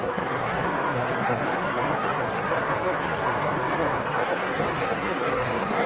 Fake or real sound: fake